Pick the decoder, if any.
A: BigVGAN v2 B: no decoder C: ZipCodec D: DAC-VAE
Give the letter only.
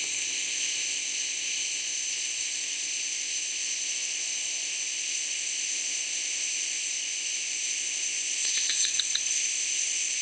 C